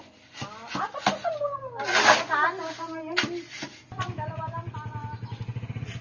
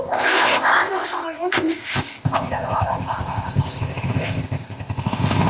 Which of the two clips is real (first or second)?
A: first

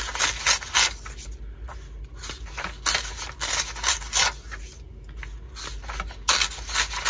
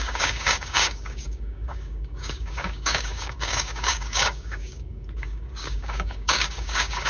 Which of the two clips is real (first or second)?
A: first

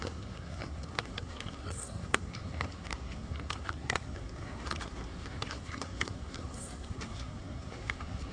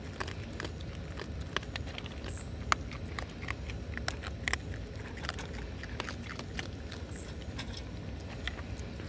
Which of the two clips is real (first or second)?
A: second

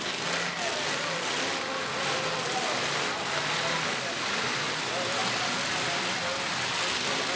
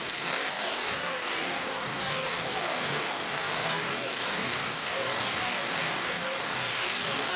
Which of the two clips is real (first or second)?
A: first